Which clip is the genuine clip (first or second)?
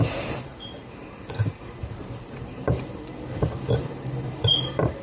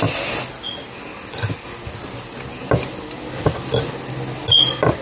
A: second